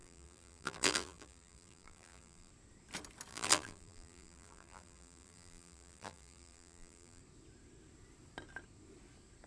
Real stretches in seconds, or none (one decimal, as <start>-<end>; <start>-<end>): 2.5-3.3; 7.2-9.5